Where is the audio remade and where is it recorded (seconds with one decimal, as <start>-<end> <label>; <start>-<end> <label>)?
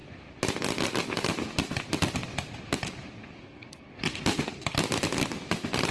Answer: 0.0-3.4 recorded; 3.4-3.9 remade; 3.9-5.9 recorded